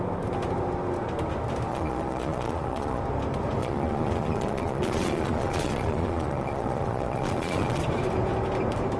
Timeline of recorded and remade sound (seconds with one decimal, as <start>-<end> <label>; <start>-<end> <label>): 0.0-1.7 recorded; 1.7-3.0 remade; 3.0-3.6 recorded; 3.6-7.8 remade; 7.8-9.0 recorded